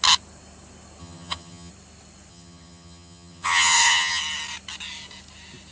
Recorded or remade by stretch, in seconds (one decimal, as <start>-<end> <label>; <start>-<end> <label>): 0.0-1.0 recorded; 1.0-1.7 remade; 1.7-2.3 recorded; 2.3-4.2 remade; 4.2-5.7 recorded